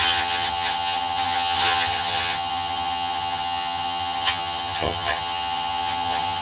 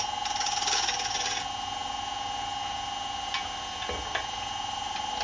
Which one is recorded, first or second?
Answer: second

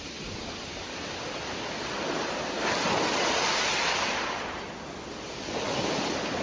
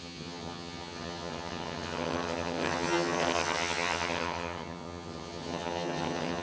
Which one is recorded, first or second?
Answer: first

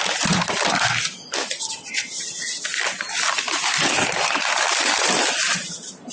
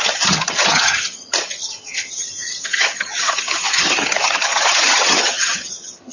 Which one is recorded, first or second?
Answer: first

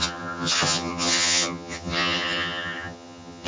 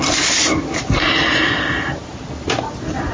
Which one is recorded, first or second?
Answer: second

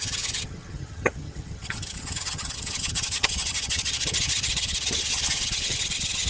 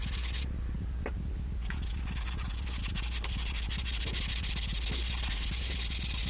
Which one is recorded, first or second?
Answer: second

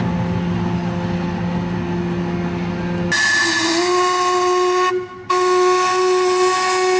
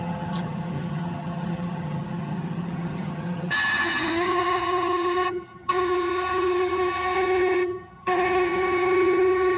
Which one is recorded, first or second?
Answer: first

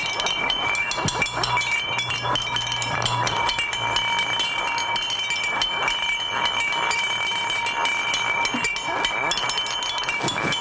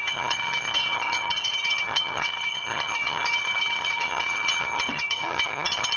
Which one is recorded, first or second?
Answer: first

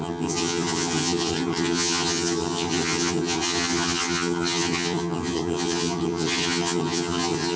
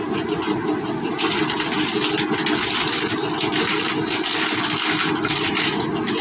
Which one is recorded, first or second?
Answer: second